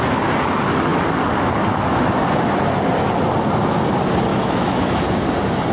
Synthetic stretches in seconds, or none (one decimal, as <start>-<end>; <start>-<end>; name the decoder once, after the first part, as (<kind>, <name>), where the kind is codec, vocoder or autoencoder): 4.3-5.0 (autoencoder, DAC-VAE)